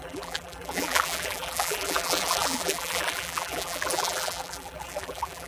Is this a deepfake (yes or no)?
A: yes